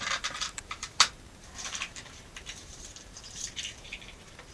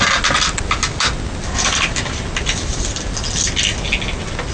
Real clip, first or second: second